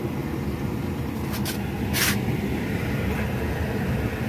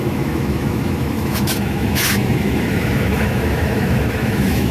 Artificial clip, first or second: second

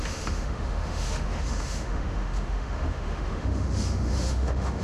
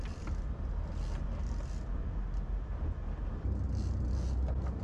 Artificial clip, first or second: first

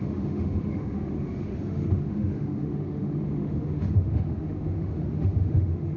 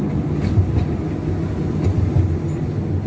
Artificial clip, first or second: first